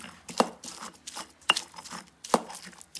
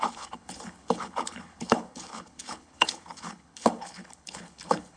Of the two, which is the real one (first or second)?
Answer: first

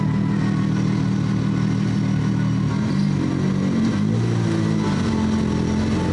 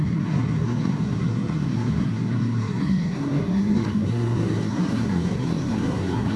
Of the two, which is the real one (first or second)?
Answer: first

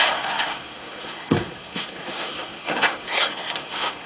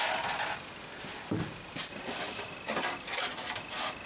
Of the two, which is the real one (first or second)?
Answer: second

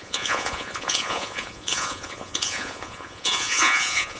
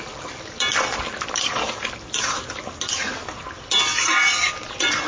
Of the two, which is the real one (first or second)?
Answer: second